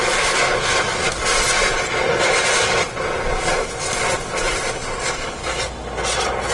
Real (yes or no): yes